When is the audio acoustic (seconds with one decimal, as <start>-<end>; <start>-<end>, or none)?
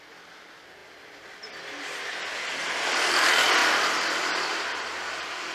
0.0-3.6; 4.8-5.5